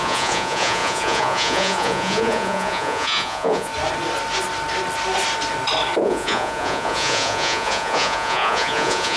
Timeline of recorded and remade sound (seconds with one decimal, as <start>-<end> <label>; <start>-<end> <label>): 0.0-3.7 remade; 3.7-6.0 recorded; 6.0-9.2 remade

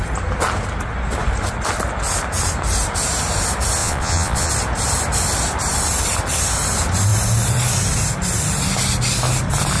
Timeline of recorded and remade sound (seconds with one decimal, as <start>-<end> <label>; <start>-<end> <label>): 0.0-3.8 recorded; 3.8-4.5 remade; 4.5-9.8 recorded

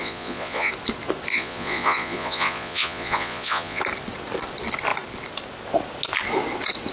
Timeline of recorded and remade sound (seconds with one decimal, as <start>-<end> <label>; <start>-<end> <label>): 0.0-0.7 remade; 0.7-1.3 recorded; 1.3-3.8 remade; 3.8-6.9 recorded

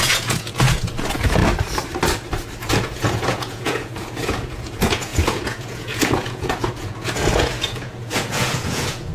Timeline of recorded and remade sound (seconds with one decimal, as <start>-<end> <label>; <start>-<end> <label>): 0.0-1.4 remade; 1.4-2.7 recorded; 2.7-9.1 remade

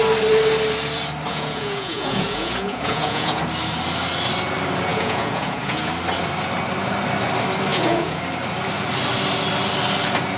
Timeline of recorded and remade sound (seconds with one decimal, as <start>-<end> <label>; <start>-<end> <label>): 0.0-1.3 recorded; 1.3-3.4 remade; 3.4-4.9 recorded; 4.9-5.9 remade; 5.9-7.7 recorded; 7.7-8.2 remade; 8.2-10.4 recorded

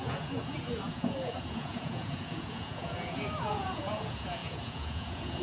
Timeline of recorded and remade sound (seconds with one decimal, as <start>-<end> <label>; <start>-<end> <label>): 0.0-5.4 remade

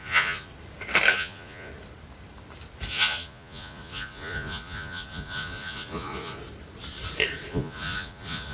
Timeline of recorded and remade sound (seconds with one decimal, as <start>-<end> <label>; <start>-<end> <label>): 0.0-0.5 remade; 0.5-1.1 recorded; 1.1-1.7 remade; 1.7-2.9 recorded; 2.9-6.4 remade; 6.4-7.5 recorded; 7.5-8.5 remade

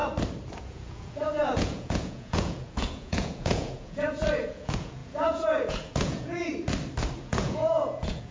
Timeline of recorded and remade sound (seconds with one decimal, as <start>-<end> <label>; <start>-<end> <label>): 0.0-0.6 recorded; 0.6-6.5 remade; 6.5-7.2 recorded; 7.2-8.3 remade